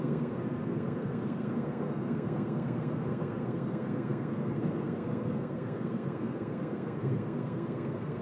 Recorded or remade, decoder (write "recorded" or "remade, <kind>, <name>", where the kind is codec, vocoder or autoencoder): remade, codec, SNAC